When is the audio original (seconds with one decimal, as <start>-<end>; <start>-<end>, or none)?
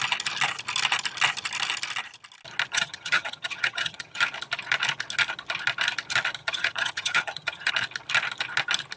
0.0-2.7; 4.2-6.4; 7.7-9.0